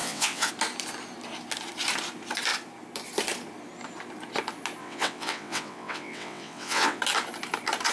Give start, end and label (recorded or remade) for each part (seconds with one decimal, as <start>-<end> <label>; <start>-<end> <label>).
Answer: 0.0-0.5 remade; 0.5-4.8 recorded; 4.8-7.0 remade; 7.0-7.9 recorded